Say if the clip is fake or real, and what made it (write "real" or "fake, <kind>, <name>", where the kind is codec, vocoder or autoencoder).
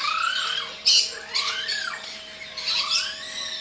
real